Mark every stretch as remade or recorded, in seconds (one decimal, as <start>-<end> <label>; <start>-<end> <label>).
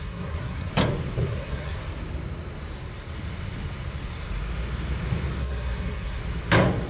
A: 0.0-0.7 remade; 0.7-1.3 recorded; 1.3-1.8 remade; 1.8-5.4 recorded; 5.4-6.2 remade; 6.2-6.9 recorded